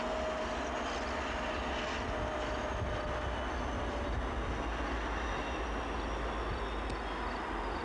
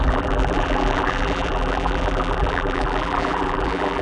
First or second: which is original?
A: first